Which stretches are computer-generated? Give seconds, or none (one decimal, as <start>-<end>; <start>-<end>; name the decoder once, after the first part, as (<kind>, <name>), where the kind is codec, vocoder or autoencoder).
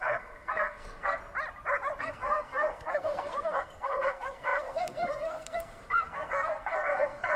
0.0-1.2 (codec, SNAC); 2.0-7.4